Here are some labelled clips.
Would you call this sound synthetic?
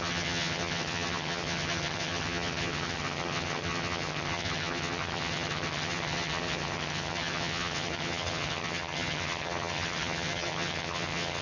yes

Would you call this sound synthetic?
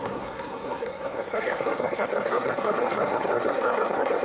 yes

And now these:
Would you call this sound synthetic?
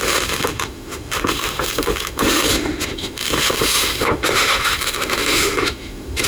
yes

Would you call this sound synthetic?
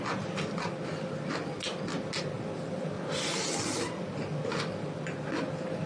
no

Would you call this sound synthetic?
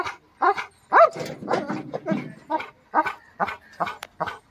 no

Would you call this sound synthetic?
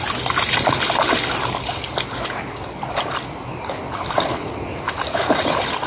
no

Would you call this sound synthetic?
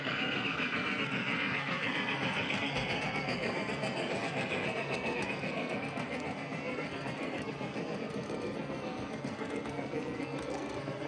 yes